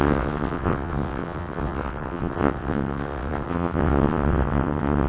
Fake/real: fake